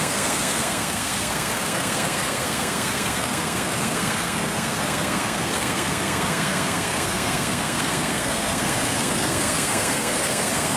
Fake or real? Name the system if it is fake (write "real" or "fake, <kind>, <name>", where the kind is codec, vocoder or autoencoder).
fake, codec, SNAC